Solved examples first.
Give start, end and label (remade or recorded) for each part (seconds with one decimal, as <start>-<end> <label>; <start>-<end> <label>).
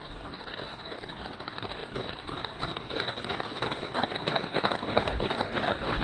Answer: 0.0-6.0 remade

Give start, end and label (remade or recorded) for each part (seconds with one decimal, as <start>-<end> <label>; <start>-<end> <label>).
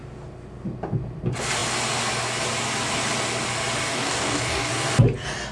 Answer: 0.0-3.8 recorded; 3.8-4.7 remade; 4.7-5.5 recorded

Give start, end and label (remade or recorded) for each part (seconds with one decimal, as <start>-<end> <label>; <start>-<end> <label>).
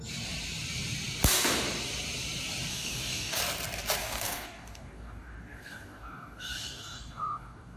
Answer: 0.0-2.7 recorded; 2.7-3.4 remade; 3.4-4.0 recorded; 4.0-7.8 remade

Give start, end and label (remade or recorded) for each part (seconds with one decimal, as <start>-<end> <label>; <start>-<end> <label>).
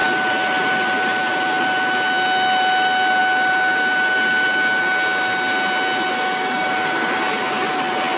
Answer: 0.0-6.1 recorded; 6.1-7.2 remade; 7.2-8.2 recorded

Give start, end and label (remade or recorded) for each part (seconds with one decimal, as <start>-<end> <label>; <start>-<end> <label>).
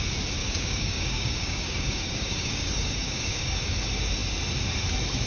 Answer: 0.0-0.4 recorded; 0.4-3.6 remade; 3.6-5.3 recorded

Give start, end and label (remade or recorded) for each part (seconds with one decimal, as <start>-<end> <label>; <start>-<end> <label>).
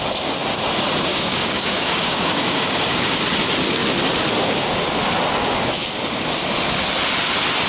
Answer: 0.0-1.1 recorded; 1.1-3.2 remade; 3.2-7.7 recorded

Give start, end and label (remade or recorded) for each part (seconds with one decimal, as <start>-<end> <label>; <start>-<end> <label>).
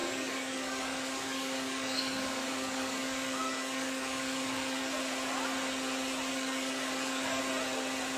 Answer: 0.0-4.9 remade; 4.9-6.3 recorded; 6.3-7.4 remade; 7.4-8.2 recorded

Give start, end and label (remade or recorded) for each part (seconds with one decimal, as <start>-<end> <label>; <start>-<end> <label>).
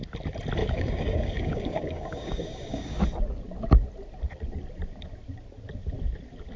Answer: 0.0-0.6 recorded; 0.6-3.0 remade; 3.0-6.6 recorded